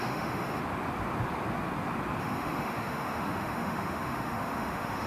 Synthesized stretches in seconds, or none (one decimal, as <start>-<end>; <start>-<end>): 0.0-0.6; 2.2-5.1